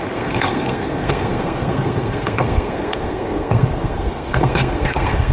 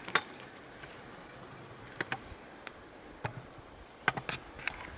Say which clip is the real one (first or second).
second